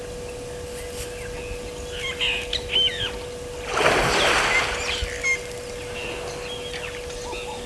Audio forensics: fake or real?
real